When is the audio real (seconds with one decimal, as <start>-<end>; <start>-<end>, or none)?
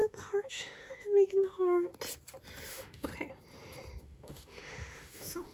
1.9-2.7; 3.1-4.0